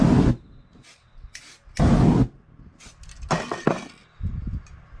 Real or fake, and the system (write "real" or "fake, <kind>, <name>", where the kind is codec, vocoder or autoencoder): real